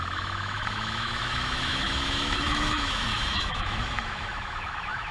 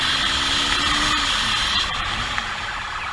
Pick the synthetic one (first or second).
first